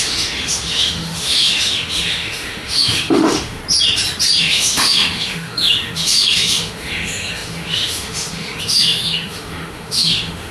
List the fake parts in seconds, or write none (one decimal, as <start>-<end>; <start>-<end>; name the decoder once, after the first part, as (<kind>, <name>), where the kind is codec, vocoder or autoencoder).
0.0-3.6 (autoencoder, DAC-VAE); 4.4-10.5